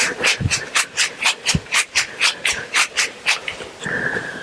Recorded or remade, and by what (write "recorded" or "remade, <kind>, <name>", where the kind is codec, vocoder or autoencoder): remade, vocoder, BigVGAN v2